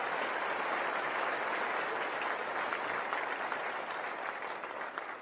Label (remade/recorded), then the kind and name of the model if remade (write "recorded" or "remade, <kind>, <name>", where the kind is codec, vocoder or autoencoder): recorded